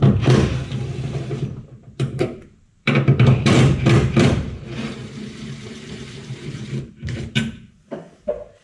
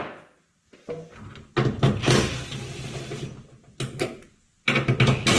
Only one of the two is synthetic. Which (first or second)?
first